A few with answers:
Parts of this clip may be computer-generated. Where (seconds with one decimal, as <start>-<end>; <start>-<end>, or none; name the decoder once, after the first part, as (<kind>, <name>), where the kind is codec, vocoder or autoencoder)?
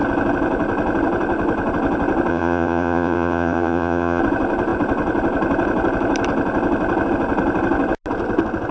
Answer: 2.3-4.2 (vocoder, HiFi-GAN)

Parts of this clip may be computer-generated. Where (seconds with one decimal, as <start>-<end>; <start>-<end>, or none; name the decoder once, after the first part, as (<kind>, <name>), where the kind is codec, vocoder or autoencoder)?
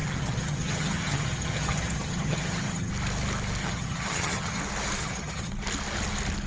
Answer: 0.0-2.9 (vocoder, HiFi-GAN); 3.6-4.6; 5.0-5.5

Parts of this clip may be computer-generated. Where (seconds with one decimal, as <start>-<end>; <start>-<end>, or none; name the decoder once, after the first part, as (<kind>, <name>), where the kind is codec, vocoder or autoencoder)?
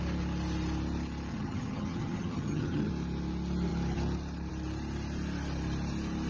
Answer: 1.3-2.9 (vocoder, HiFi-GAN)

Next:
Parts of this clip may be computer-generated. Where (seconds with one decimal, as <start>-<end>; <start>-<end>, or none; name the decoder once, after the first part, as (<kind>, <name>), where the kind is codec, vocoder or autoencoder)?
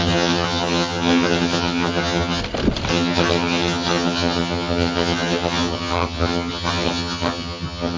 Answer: 0.0-2.4 (vocoder, HiFi-GAN); 2.9-8.0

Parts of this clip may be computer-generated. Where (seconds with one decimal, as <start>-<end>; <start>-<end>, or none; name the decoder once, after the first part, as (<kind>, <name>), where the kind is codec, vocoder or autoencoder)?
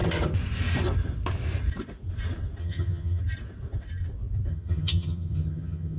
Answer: 2.6-3.2 (vocoder, HiFi-GAN); 4.5-6.0